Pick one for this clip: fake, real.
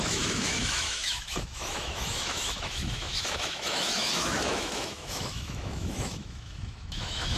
fake